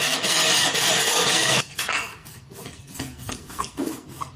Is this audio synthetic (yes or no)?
yes